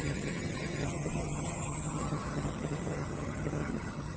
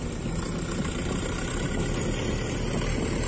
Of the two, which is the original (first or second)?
second